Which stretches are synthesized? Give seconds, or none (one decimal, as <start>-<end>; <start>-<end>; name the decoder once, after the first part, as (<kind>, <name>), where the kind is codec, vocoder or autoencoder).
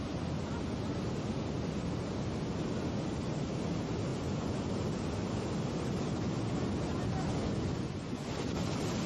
4.1-4.7 (vocoder, Vocos); 7.3-8.3